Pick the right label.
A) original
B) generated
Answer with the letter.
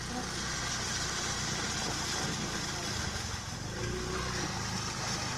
A